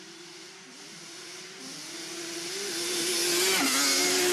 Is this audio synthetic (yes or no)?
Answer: no